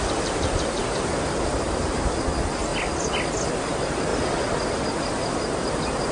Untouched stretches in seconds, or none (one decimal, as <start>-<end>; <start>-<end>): 0.0-6.1